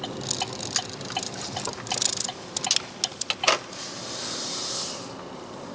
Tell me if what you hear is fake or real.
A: real